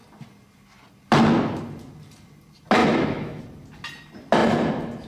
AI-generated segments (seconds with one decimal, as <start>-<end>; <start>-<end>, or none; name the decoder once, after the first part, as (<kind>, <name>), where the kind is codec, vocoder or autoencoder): 2.8-3.4 (autoencoder, DAC-VAE)